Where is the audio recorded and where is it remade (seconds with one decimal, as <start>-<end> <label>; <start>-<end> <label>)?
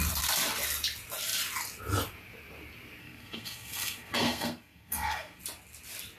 0.0-3.0 recorded; 3.0-5.4 remade; 5.4-6.2 recorded